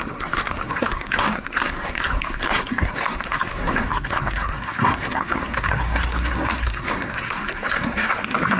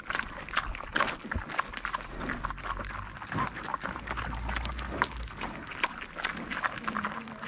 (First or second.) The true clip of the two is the second